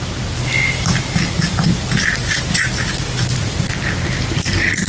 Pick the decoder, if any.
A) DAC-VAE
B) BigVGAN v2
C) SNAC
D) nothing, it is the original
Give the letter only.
D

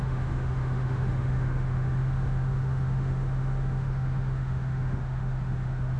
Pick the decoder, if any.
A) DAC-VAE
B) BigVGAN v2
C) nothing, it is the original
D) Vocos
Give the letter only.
A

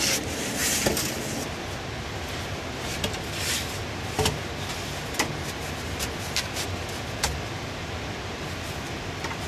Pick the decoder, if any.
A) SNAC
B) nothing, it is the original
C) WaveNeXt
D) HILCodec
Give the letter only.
B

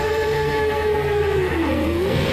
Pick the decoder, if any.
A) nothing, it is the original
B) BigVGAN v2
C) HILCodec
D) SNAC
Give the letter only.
D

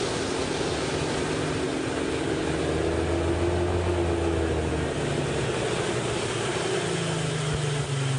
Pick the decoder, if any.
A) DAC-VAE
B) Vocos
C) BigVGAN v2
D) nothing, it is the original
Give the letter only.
D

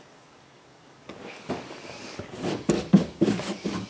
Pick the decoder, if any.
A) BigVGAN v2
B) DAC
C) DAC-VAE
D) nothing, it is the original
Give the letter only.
B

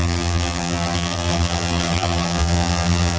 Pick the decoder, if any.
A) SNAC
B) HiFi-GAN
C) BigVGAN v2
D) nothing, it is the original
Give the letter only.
C